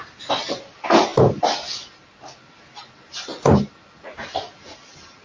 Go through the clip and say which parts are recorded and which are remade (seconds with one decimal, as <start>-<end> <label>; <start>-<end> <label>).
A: 0.0-5.2 recorded